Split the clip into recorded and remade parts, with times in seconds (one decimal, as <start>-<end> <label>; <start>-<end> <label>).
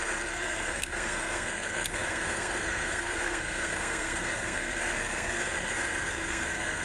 0.0-6.8 remade